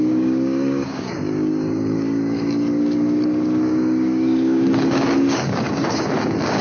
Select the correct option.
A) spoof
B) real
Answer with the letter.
A